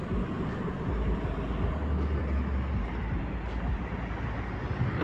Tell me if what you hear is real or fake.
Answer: real